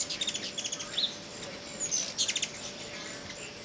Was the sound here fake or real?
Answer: real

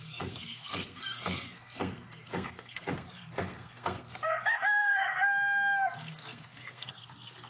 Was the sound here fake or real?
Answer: fake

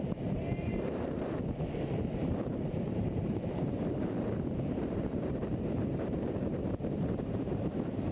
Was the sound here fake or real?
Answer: fake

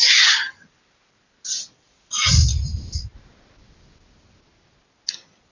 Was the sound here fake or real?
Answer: real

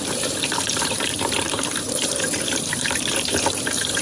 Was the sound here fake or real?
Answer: fake